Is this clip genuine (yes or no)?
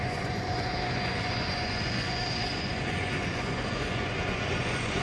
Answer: no